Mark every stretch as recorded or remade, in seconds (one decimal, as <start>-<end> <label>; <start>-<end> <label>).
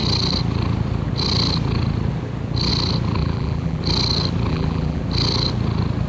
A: 0.0-3.2 recorded; 3.2-3.8 remade; 3.8-4.5 recorded; 4.5-5.0 remade; 5.0-6.1 recorded